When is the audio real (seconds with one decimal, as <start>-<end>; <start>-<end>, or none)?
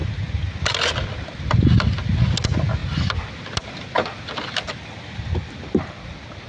0.0-6.5